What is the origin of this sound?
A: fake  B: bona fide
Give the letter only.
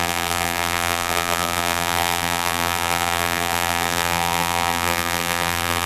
A